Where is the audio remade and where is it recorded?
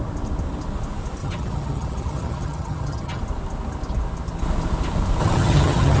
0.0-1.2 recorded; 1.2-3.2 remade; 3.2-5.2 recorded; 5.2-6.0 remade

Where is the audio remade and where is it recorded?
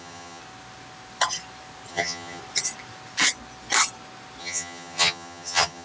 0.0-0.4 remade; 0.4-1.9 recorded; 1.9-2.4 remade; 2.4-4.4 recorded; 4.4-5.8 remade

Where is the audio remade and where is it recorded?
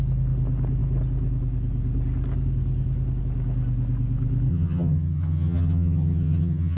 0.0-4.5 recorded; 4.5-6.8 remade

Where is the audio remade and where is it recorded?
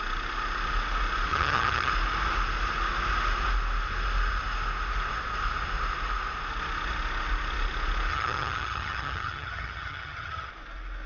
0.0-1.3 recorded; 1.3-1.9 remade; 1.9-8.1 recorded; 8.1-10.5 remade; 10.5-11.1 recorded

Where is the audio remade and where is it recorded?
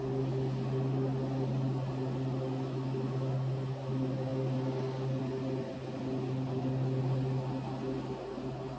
0.0-8.8 recorded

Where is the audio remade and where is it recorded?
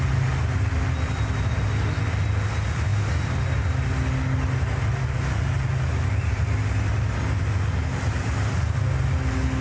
0.0-9.6 recorded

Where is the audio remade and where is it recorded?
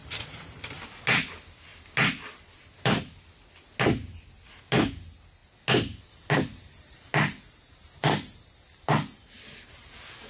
0.0-10.3 recorded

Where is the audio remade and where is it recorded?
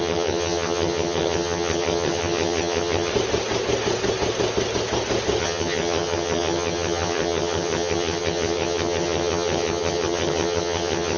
0.0-3.1 remade; 3.1-5.4 recorded; 5.4-11.2 remade